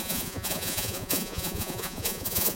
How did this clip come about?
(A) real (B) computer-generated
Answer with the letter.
B